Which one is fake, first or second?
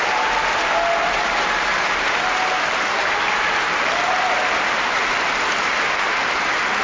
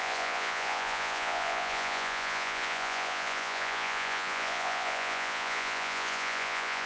second